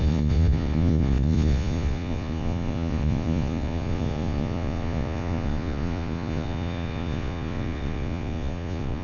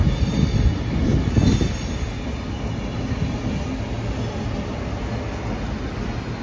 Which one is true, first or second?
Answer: second